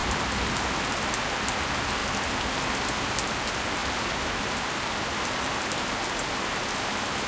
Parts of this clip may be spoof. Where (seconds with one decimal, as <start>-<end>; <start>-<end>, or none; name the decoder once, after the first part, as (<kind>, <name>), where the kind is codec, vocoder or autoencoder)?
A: 0.0-0.5 (vocoder, BigVGAN v2)